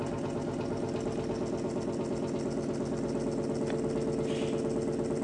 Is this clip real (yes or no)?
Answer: yes